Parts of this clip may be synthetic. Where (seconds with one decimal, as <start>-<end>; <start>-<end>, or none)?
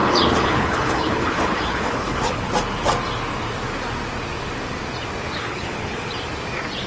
0.0-2.5; 5.4-6.1